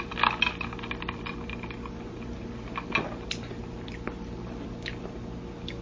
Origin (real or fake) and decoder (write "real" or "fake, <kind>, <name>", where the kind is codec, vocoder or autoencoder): real